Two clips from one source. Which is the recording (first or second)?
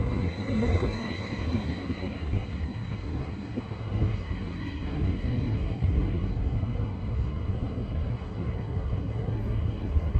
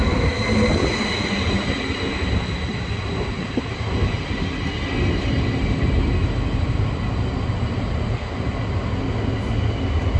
second